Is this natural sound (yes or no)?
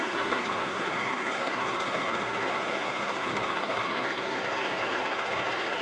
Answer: no